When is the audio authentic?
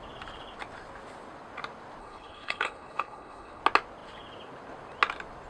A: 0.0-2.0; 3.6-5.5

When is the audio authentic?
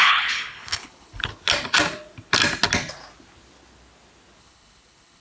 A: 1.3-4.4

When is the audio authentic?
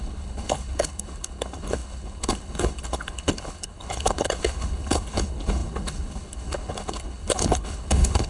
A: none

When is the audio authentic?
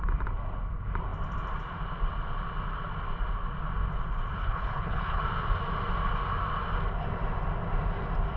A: 0.0-4.4; 5.2-8.4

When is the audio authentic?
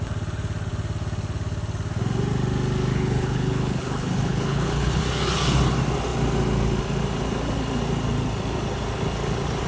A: 0.0-2.9; 5.0-9.7